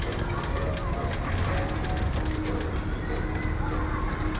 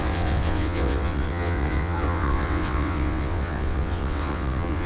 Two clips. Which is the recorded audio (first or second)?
first